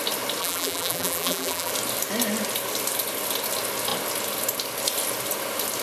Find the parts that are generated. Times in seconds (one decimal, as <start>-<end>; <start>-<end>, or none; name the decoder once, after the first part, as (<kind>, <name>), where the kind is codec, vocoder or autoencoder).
0.4-1.7 (vocoder, BigVGAN v2)